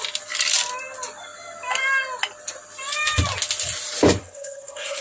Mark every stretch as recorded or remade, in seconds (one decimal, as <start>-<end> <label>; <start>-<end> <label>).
0.0-4.2 recorded; 4.2-5.0 remade